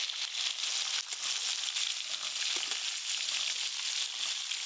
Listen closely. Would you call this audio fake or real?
real